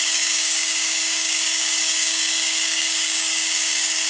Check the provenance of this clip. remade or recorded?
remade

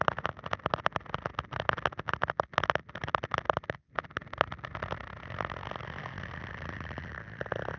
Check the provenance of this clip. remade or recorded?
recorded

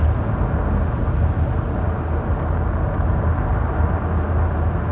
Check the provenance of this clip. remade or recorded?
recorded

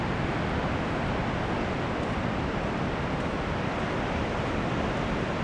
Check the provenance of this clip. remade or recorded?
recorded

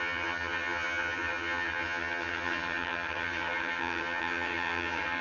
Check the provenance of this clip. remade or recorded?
remade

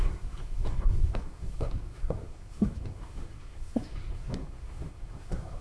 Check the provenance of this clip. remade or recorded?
remade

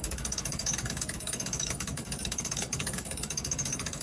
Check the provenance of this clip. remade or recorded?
remade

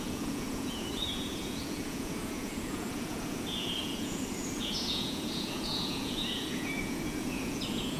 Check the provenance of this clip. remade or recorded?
remade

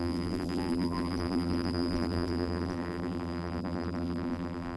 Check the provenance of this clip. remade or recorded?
remade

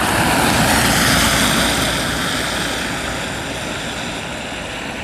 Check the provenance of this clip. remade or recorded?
recorded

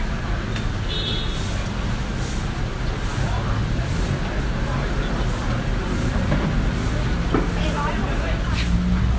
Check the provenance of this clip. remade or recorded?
recorded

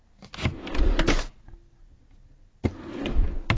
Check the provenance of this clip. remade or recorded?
recorded